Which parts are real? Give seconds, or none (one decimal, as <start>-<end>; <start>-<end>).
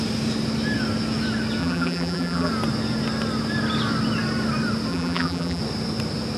0.0-1.6; 2.5-4.9; 5.6-6.4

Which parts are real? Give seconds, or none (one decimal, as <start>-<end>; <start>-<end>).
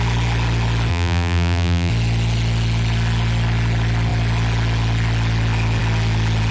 0.0-0.9; 1.9-6.5